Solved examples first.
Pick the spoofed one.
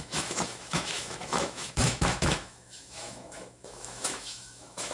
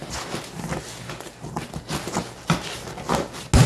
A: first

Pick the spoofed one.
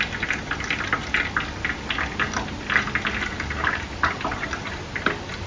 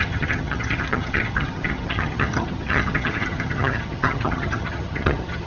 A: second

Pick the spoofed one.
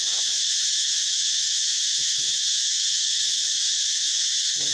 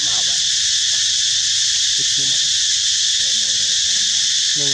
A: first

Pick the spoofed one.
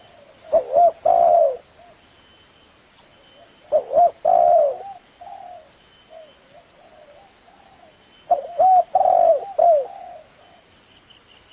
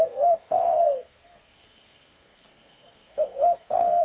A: second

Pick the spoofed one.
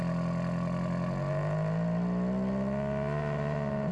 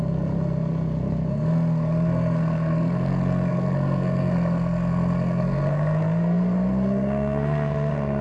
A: second